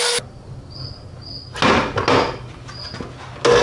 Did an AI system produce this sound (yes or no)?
no